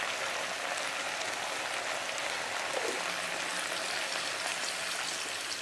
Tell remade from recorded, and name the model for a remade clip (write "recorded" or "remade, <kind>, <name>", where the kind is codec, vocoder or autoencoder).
recorded